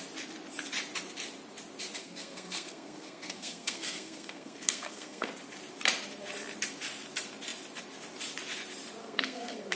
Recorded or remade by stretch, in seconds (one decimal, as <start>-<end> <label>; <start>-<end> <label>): 0.0-2.0 recorded; 2.0-5.3 remade; 5.3-9.0 recorded; 9.0-9.8 remade